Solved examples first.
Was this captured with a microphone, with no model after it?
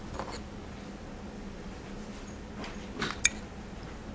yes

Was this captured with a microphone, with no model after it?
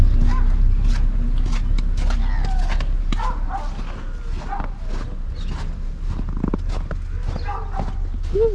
yes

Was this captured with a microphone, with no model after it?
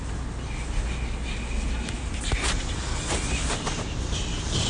yes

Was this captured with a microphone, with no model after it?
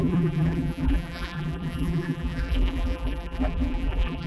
no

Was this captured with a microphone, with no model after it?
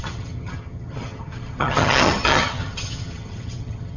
no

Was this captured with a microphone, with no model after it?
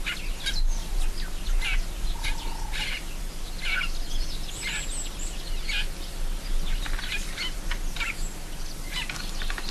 yes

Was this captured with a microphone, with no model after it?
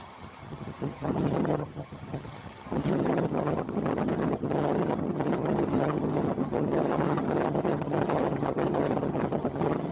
no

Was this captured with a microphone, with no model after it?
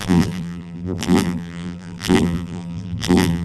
no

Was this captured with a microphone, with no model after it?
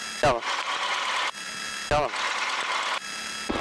yes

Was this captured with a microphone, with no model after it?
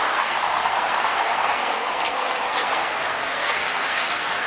no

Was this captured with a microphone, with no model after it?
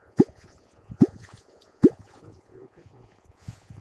no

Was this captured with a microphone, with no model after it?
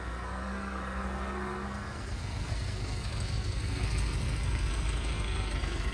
no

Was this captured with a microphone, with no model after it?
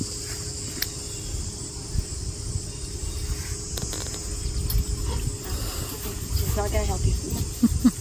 yes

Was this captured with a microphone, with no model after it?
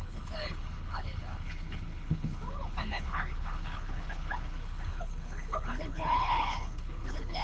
no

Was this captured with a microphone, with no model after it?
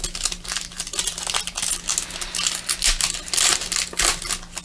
yes